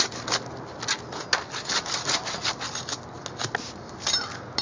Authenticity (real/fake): real